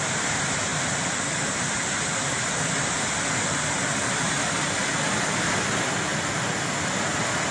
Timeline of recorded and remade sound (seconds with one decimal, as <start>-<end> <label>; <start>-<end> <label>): 0.0-7.5 recorded